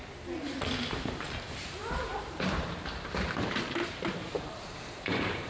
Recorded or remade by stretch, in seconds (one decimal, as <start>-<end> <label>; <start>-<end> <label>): 0.0-0.9 recorded; 0.9-5.5 remade